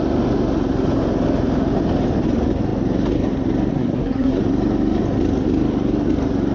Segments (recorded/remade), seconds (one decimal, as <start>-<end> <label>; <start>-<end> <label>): 0.0-3.7 recorded; 3.7-4.4 remade; 4.4-6.5 recorded